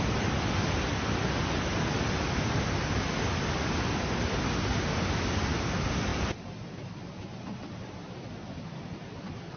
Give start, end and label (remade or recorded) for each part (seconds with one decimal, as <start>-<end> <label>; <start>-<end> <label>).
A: 0.0-6.1 recorded; 6.1-8.3 remade; 8.3-9.6 recorded